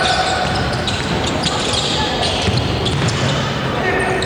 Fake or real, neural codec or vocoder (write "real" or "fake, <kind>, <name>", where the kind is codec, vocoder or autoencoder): real